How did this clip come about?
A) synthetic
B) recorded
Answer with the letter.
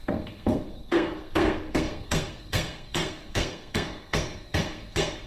A